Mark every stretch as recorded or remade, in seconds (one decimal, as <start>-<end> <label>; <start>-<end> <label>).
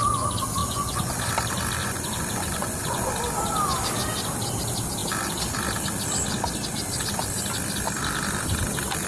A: 0.0-0.6 recorded; 0.6-1.3 remade; 1.3-1.8 recorded; 1.8-3.1 remade; 3.1-9.1 recorded